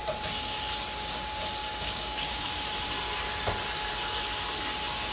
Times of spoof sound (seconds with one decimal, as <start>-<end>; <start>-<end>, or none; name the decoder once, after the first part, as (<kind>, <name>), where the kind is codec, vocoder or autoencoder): 1.6-2.5 (codec, DAC)